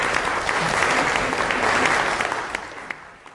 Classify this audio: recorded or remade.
recorded